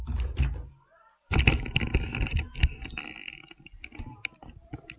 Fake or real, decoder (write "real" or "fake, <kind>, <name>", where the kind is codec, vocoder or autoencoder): fake, vocoder, BigVGAN v2